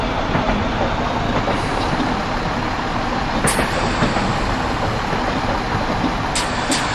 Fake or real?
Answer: real